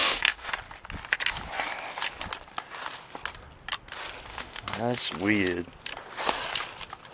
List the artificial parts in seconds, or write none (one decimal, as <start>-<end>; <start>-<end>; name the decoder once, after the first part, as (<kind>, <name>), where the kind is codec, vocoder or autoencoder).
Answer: 0.0-0.5 (autoencoder, DAC-VAE); 4.3-5.0